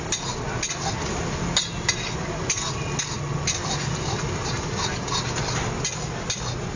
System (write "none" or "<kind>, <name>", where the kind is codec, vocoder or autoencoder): none